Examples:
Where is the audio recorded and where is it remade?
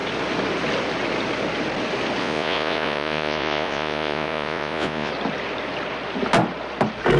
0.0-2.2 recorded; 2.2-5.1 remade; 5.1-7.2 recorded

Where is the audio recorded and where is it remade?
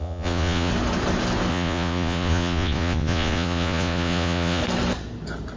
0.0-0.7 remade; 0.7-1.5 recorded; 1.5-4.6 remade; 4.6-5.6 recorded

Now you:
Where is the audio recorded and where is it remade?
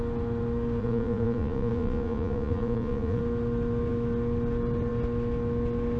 0.0-0.8 recorded; 0.8-3.2 remade; 3.2-6.0 recorded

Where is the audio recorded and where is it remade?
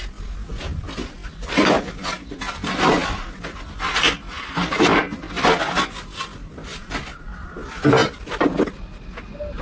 0.0-9.6 recorded